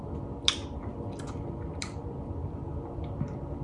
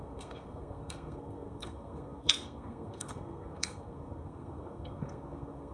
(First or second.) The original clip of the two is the first